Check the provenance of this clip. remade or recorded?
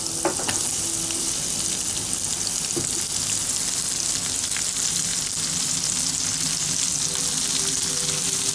recorded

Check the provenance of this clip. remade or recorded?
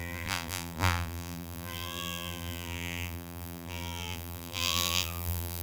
remade